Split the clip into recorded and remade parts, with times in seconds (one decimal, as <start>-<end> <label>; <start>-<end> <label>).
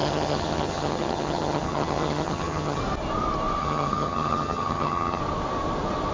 0.0-2.8 remade; 2.8-3.6 recorded; 3.6-5.2 remade; 5.2-6.1 recorded